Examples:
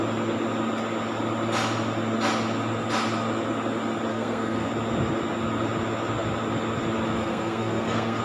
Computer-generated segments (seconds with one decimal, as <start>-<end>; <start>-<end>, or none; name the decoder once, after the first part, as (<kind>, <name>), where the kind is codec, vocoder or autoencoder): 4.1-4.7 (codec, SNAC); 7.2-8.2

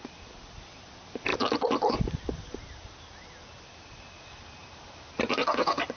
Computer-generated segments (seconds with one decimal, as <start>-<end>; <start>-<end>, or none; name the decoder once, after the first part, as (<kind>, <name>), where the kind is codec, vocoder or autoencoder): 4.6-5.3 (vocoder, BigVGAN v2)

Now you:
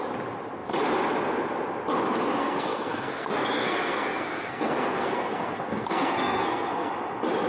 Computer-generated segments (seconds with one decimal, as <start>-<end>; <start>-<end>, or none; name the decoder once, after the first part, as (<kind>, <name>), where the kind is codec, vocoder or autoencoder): 2.4-6.9 (codec, SNAC)

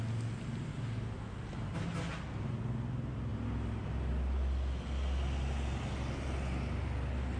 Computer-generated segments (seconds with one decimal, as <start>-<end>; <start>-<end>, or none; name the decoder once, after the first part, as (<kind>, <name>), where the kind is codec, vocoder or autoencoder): none